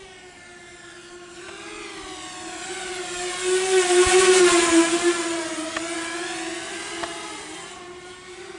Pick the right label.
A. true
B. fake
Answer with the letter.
A